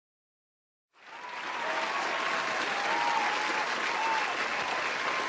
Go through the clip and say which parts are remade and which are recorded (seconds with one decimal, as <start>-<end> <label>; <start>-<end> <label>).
0.0-5.3 recorded